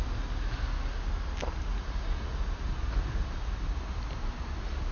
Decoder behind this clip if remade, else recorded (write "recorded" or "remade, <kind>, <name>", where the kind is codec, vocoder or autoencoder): recorded